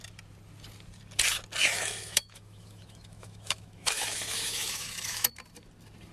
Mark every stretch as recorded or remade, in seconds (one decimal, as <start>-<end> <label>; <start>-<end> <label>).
0.0-1.6 recorded; 1.6-5.3 remade; 5.3-6.1 recorded